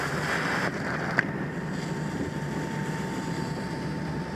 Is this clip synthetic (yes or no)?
no